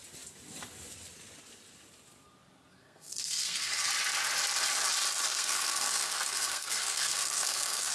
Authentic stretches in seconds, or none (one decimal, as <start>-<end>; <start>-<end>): 0.0-2.8; 3.9-5.3